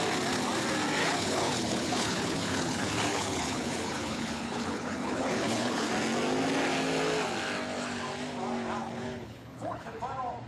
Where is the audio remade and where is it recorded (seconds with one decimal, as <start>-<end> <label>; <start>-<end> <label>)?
0.0-1.0 recorded; 1.0-5.9 remade; 5.9-8.8 recorded; 8.8-10.0 remade; 10.0-10.5 recorded